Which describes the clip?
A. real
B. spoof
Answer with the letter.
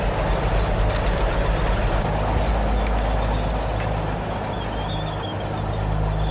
A